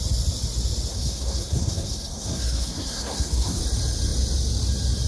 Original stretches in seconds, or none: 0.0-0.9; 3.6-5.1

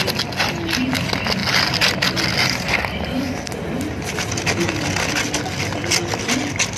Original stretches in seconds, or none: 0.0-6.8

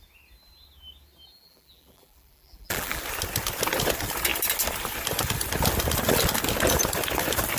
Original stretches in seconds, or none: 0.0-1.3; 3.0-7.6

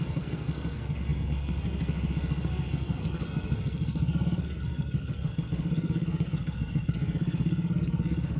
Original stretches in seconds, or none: none

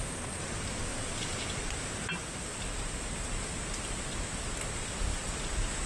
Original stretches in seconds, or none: 0.0-5.9

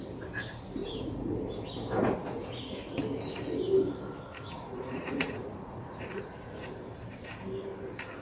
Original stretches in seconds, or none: 0.0-0.8; 1.4-2.2; 3.0-4.3; 6.8-8.2

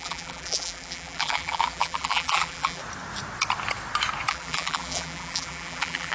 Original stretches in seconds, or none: 2.8-4.3